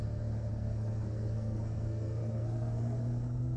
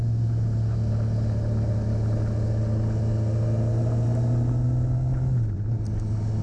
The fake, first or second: first